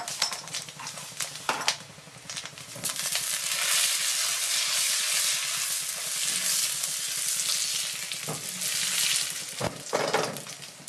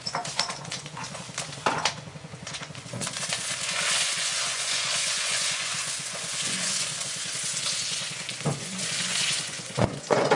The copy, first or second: second